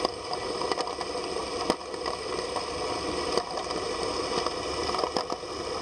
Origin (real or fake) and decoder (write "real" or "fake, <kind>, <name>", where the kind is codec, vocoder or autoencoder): real